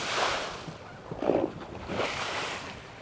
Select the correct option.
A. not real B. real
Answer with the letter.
B